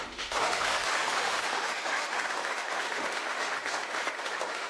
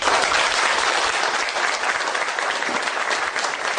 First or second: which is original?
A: second